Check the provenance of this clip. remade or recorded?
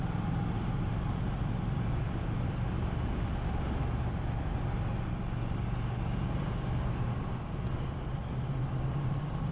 recorded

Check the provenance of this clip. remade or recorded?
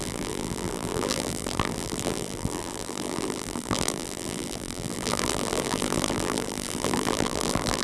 remade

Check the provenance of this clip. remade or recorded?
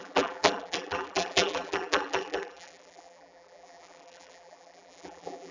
remade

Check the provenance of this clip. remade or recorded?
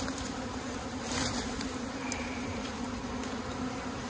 remade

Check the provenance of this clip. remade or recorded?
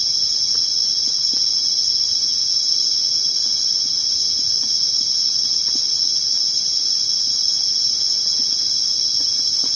recorded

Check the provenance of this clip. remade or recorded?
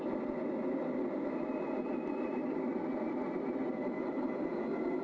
remade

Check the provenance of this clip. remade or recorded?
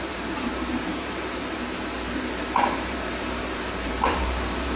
remade